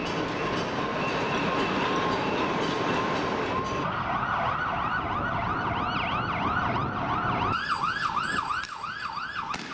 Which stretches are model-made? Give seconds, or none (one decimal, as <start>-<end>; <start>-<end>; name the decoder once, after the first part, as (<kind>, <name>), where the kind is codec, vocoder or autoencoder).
none